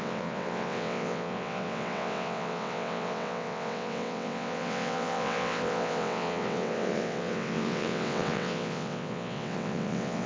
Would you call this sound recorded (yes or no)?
no